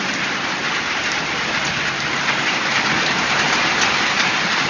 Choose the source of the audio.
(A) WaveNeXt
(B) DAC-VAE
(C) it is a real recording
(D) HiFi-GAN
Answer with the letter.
C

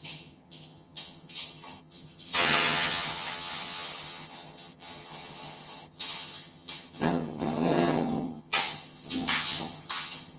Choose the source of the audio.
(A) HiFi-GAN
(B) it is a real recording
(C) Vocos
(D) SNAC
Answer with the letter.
A